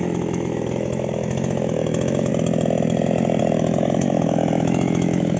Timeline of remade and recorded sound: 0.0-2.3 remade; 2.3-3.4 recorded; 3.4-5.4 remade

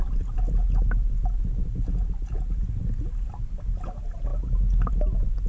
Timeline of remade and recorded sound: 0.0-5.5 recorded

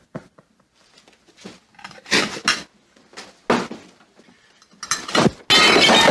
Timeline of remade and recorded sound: 0.0-6.1 recorded

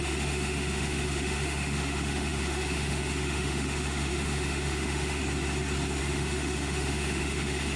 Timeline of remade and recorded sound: 0.0-5.2 remade; 5.2-6.0 recorded; 6.0-7.8 remade

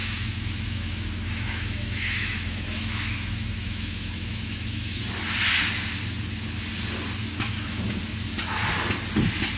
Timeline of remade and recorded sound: 0.0-5.0 remade; 5.0-7.2 recorded; 7.2-7.8 remade; 7.8-9.6 recorded

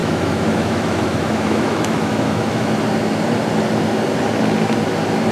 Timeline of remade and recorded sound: 0.0-2.7 remade; 2.7-5.3 recorded